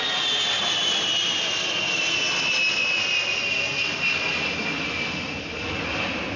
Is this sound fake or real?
real